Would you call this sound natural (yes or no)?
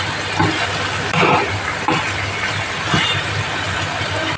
yes